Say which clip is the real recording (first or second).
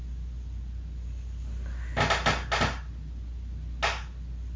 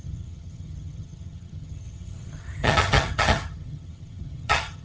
first